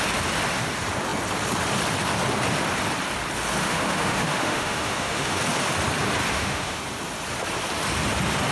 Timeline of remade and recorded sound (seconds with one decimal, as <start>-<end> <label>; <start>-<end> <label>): 0.0-3.6 recorded; 3.6-5.4 remade; 5.4-6.3 recorded; 6.3-6.8 remade; 6.8-8.5 recorded